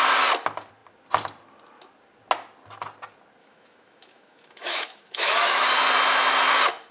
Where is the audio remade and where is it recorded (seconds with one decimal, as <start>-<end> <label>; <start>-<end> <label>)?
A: 0.0-3.4 recorded; 3.4-5.7 remade; 5.7-6.9 recorded